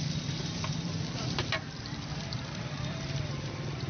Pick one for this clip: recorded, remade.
remade